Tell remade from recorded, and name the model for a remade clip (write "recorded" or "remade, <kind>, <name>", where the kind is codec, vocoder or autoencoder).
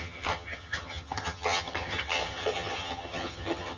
remade, vocoder, HiFi-GAN